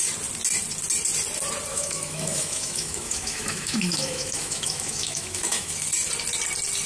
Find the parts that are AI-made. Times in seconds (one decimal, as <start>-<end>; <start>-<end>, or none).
1.7-5.8